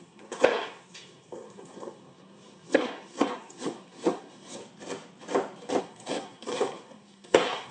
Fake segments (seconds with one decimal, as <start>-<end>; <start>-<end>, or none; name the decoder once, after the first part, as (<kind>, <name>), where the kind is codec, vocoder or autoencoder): 0.0-4.6 (codec, SNAC); 5.8-7.7